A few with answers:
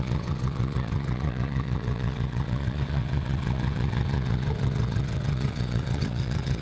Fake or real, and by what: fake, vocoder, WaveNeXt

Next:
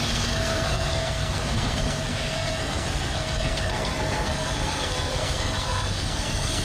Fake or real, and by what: fake, codec, SNAC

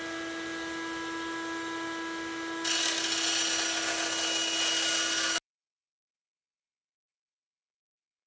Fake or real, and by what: real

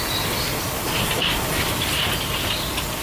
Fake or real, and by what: real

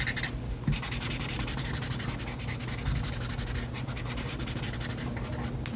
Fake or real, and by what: real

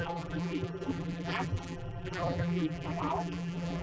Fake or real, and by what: fake, vocoder, BigVGAN v2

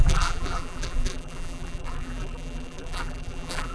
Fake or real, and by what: fake, vocoder, BigVGAN v2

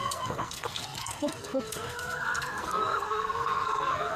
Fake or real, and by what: fake, codec, SNAC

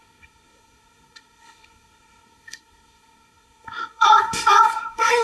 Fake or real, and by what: fake, codec, SNAC